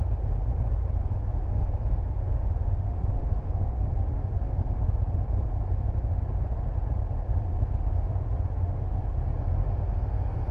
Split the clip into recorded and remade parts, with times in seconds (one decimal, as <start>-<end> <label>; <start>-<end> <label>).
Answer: 0.0-1.0 recorded; 1.0-5.0 remade; 5.0-7.5 recorded; 7.5-9.0 remade; 9.0-9.6 recorded; 9.6-10.5 remade